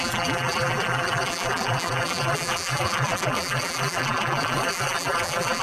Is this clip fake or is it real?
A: fake